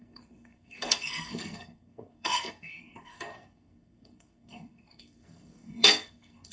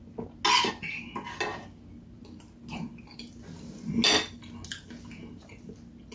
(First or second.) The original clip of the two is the second